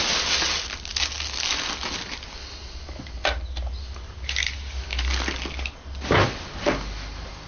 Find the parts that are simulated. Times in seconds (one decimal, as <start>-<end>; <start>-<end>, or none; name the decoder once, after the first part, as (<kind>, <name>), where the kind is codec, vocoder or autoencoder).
none